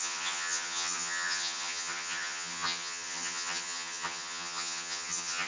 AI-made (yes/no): yes